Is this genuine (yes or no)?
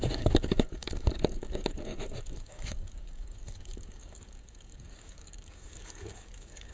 no